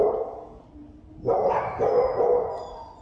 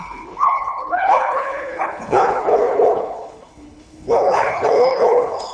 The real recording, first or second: first